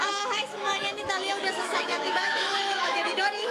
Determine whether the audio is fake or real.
fake